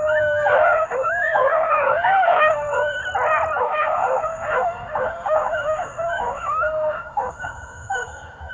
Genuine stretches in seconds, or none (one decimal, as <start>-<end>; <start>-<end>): 3.0-3.6